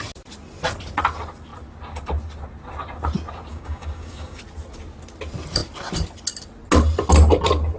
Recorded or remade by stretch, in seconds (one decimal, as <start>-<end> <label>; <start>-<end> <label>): 0.0-3.5 recorded; 3.5-4.4 remade; 4.4-7.8 recorded